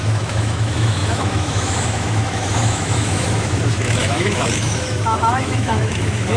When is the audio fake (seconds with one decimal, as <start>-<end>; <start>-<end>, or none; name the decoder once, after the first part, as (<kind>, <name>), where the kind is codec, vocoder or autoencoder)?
0.0-6.4 (autoencoder, DAC-VAE)